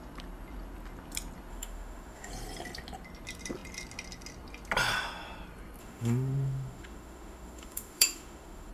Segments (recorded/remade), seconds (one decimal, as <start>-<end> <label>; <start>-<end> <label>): 0.0-1.5 recorded; 1.5-2.3 remade; 2.3-5.8 recorded; 5.8-8.7 remade